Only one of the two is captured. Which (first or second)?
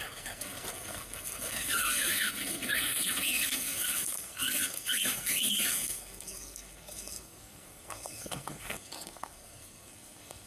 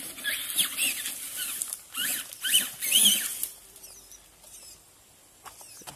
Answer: second